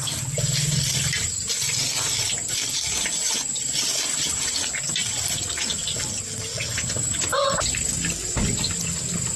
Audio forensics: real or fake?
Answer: real